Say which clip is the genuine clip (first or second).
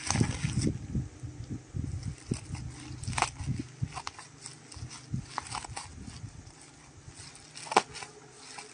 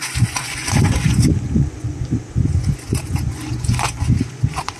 first